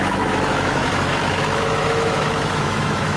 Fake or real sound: fake